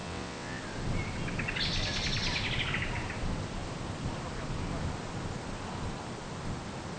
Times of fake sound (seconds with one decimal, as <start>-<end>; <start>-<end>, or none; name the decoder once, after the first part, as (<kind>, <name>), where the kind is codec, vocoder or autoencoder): 0.0-0.6 (vocoder, WaveNeXt)